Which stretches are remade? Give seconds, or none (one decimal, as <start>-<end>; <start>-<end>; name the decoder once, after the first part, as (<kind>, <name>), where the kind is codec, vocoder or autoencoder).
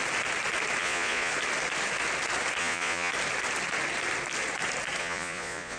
0.8-1.3 (vocoder, Vocos); 2.6-3.1; 5.0-5.8